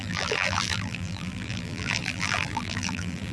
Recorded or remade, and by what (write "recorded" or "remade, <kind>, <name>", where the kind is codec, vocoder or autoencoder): remade, vocoder, BigVGAN v2